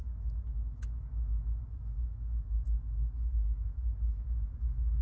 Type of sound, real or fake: fake